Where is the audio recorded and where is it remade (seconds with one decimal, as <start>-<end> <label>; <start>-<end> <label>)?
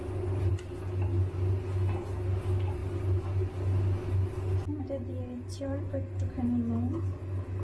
0.0-7.6 recorded